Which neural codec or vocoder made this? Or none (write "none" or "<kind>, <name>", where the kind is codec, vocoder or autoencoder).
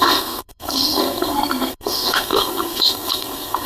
codec, SNAC